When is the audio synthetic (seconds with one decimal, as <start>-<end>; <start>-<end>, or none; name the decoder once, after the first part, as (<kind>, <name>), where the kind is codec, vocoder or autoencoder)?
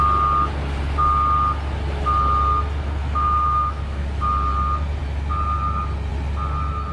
3.0-4.0 (autoencoder, DAC-VAE)